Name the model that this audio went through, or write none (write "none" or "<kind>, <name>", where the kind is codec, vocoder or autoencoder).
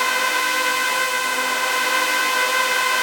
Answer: none